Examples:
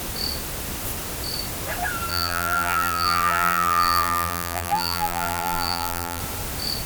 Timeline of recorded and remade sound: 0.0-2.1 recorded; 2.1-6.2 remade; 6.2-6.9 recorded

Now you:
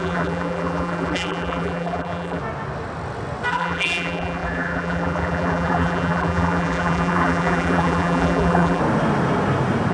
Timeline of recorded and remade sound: 0.0-2.4 remade; 2.4-3.5 recorded; 3.5-8.8 remade; 8.8-9.9 recorded

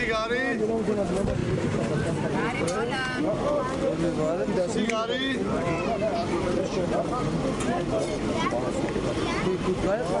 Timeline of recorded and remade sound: 0.0-1.4 recorded; 1.4-3.2 remade; 3.2-6.2 recorded; 6.2-7.0 remade; 7.0-10.2 recorded

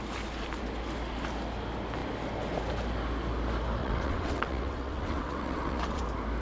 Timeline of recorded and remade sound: 0.0-3.8 recorded; 3.8-6.0 remade; 6.0-6.4 recorded